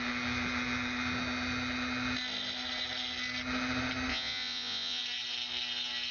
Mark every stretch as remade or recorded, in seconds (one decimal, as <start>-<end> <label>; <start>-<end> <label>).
0.0-4.1 recorded; 4.1-5.0 remade; 5.0-6.1 recorded